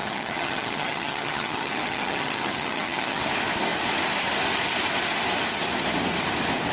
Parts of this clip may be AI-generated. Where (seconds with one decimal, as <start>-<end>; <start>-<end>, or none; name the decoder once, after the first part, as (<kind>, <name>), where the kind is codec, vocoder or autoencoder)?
0.0-3.2 (vocoder, HiFi-GAN)